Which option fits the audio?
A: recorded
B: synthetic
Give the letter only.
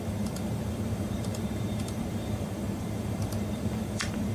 B